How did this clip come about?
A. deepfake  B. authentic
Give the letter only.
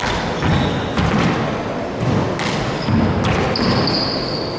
B